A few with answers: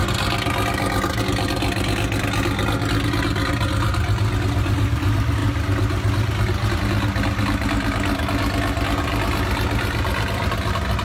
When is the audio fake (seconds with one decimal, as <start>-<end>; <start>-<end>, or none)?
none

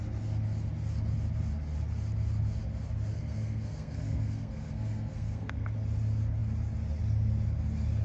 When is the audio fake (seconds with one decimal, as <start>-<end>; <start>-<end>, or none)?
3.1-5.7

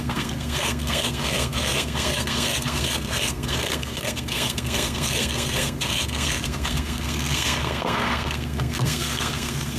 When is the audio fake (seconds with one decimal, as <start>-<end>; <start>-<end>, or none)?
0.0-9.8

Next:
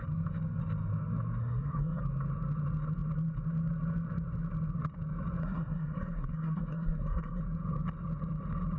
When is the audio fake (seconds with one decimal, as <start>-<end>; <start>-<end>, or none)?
1.4-2.0; 5.4-7.4

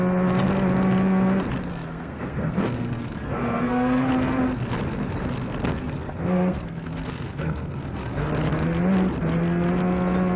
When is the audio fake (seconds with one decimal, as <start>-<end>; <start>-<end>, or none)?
1.7-4.1; 5.8-8.3

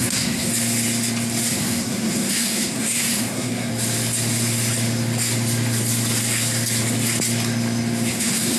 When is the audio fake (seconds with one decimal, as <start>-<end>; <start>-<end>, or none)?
0.0-0.5; 1.5-3.7; 8.1-8.6